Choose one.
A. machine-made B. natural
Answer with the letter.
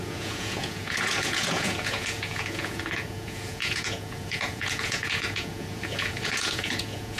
A